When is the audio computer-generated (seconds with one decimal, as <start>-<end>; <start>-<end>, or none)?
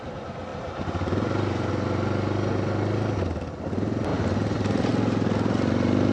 0.5-1.7; 4.1-4.9